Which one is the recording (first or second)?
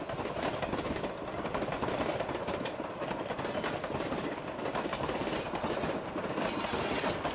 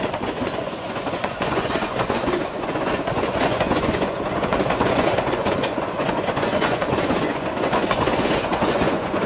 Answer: first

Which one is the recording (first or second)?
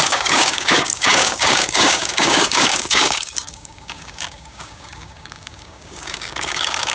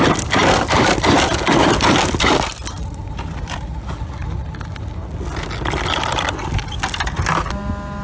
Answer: second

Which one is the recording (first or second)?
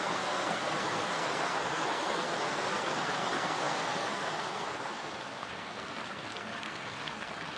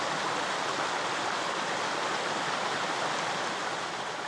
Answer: second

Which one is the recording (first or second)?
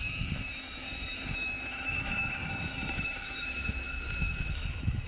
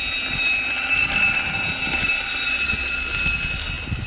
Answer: second